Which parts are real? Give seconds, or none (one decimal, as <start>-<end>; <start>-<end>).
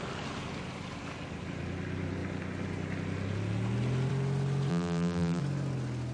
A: 0.0-4.7; 5.4-6.1